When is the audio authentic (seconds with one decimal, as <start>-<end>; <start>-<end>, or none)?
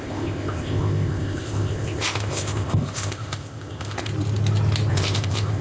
4.1-4.9